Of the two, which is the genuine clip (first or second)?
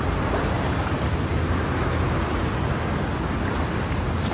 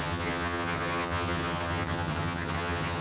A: first